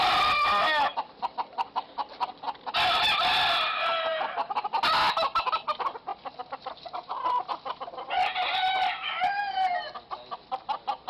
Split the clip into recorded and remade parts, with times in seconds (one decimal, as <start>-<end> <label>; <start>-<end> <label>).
0.0-11.1 recorded